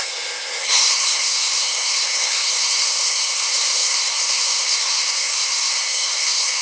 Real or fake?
fake